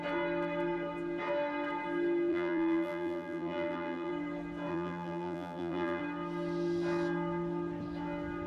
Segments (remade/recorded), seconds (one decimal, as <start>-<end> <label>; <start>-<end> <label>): 0.0-2.3 recorded; 2.3-4.1 remade; 4.1-4.7 recorded; 4.7-6.0 remade; 6.0-8.5 recorded